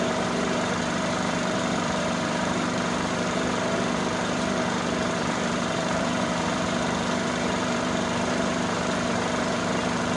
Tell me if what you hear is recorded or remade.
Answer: remade